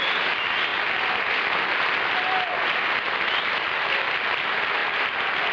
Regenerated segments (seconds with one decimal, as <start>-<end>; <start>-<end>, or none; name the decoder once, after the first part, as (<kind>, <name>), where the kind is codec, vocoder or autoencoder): none